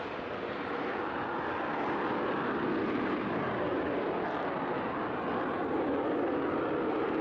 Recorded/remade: recorded